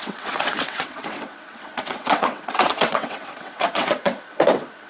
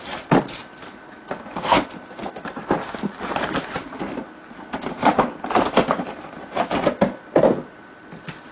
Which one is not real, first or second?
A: first